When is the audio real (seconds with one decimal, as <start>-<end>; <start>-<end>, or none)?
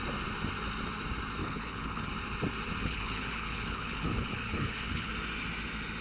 0.0-1.4; 2.1-2.8; 5.1-6.0